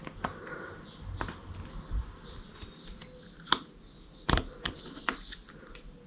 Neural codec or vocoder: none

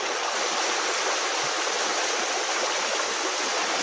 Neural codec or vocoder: none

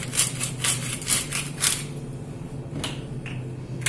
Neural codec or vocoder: none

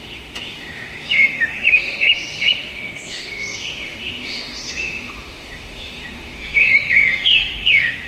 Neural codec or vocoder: autoencoder, DAC-VAE